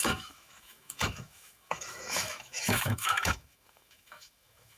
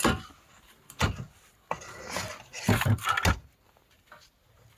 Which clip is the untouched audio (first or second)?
second